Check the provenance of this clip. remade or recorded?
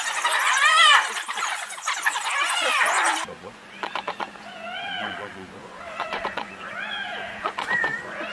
remade